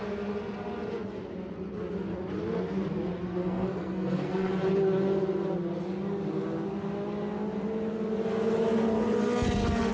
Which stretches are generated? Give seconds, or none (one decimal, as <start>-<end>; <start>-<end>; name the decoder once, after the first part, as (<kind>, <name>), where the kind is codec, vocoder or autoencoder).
3.4-4.5 (codec, SNAC)

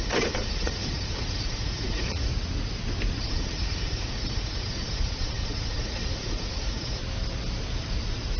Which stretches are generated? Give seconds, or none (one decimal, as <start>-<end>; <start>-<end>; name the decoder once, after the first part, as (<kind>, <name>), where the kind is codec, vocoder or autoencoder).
0.0-2.3 (vocoder, Vocos); 3.2-7.0